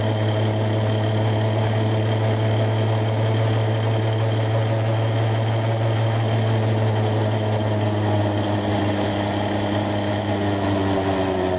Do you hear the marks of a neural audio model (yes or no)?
no